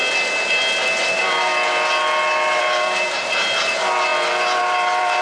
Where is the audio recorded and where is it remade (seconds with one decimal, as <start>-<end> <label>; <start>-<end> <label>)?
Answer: 0.0-1.1 recorded; 1.1-1.5 remade; 1.5-2.6 recorded; 2.6-5.2 remade

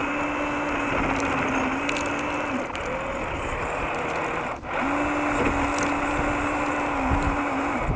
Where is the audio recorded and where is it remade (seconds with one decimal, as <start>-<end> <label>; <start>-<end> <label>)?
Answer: 0.0-8.0 recorded